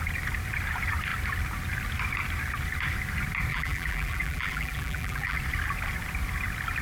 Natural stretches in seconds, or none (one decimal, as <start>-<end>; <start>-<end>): 0.0-3.5; 5.4-6.8